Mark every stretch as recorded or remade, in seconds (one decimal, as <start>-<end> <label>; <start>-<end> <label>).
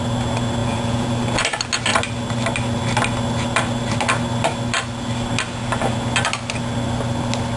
0.0-0.6 recorded; 0.6-1.1 remade; 1.1-7.6 recorded